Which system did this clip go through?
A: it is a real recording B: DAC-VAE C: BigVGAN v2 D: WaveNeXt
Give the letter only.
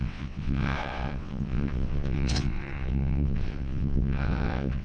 D